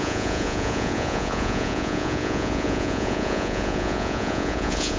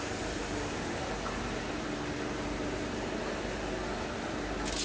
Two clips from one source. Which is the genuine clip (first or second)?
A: second